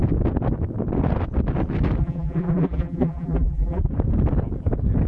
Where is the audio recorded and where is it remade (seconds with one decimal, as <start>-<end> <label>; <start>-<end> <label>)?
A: 0.0-2.0 recorded; 2.0-3.8 remade; 3.8-5.1 recorded